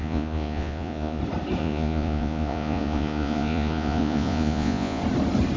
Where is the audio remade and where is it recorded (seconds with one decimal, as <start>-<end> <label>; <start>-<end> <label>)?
0.0-1.2 remade; 1.2-1.6 recorded; 1.6-5.0 remade; 5.0-5.6 recorded